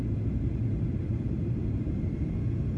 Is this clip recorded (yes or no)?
no